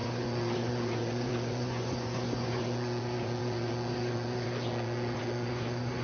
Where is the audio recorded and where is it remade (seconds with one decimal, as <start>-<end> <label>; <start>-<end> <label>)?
0.0-6.0 remade